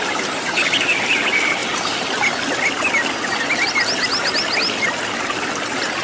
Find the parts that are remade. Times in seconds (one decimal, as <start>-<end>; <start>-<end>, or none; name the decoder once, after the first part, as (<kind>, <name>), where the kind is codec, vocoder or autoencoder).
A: none